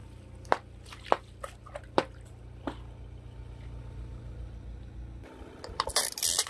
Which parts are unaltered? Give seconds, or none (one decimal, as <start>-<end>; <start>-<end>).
0.0-6.5

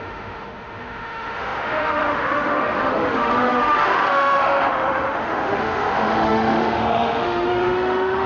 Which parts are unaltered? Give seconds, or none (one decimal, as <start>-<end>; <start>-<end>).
none

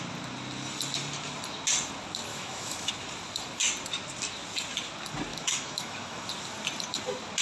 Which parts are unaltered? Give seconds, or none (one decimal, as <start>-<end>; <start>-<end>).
0.0-2.3; 2.9-5.3; 6.3-7.4